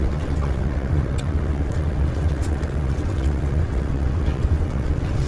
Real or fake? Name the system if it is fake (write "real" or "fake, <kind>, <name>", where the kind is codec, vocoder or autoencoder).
fake, vocoder, WaveNeXt